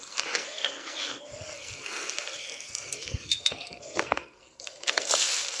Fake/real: fake